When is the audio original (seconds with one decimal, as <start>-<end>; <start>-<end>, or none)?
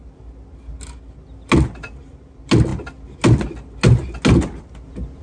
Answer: 0.0-5.2